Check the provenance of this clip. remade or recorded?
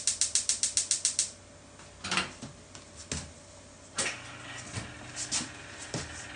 recorded